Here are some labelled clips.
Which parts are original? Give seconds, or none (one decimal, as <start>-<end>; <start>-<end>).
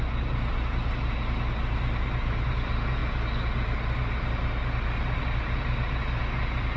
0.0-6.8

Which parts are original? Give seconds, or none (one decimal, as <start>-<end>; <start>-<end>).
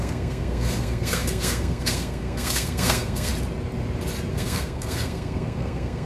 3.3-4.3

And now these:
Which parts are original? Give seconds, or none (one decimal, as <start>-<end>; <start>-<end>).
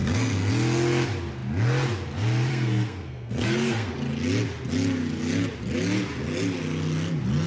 0.5-2.5; 3.9-7.5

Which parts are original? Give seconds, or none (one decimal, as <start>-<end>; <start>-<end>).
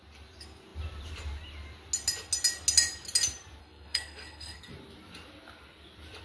0.0-3.6; 4.7-6.2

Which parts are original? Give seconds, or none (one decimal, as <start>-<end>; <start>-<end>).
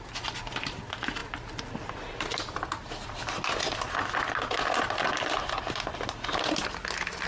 0.0-7.3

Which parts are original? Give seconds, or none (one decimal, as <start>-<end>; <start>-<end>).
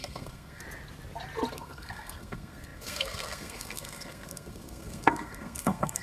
0.6-1.5